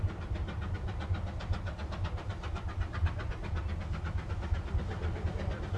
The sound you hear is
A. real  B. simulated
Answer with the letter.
A